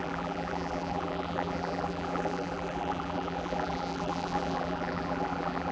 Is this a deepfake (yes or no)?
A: yes